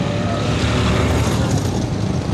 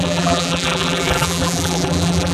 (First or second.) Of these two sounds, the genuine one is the first